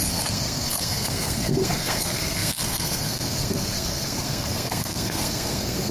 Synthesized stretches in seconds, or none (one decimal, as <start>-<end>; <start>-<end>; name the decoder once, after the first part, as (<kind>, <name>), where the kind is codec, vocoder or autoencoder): 0.0-5.9 (codec, SNAC)